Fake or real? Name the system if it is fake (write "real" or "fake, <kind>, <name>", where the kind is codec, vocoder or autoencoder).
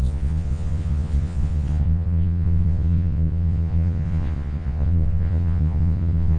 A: fake, vocoder, Vocos